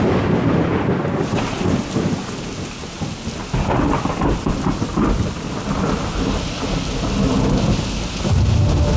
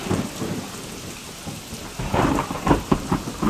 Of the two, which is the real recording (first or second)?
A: first